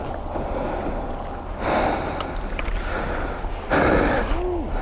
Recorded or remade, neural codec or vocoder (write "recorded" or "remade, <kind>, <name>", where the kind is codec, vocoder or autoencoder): recorded